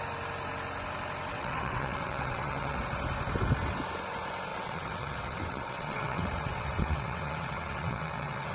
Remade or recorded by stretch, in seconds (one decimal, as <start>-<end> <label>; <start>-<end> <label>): 0.0-1.3 recorded; 1.3-2.8 remade; 2.8-4.5 recorded; 4.5-8.5 remade